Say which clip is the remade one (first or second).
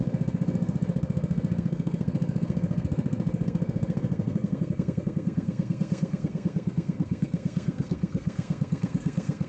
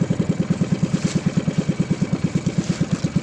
first